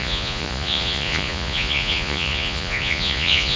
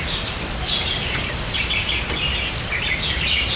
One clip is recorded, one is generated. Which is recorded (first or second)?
second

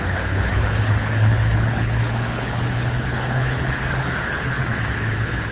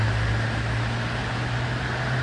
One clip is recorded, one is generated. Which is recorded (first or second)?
second